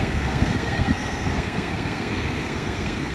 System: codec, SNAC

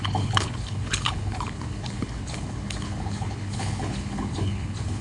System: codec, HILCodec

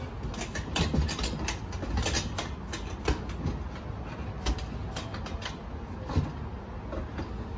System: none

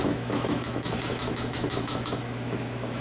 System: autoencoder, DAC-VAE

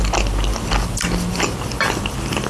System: none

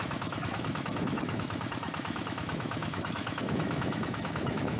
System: autoencoder, DAC-VAE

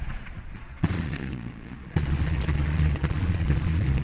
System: vocoder, Vocos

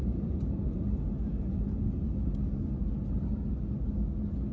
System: none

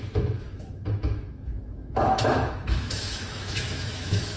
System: autoencoder, DAC-VAE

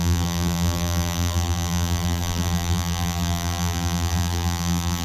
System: vocoder, BigVGAN v2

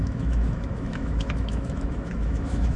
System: autoencoder, DAC-VAE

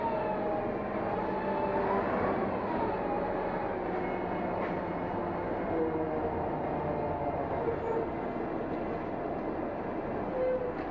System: none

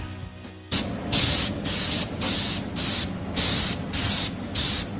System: none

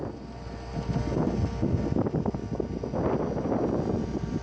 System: none